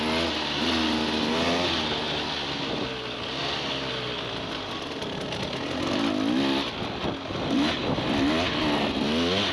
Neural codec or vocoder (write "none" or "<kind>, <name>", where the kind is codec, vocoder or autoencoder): none